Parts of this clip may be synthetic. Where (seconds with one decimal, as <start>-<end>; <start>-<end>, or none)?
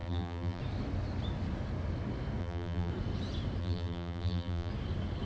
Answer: 0.0-0.6; 2.4-2.9; 3.6-4.7